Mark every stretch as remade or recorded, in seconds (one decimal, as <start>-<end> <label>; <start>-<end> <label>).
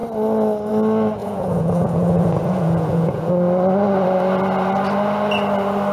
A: 0.0-1.2 recorded; 1.2-3.3 remade; 3.3-5.9 recorded